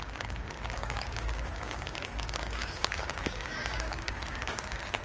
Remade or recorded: remade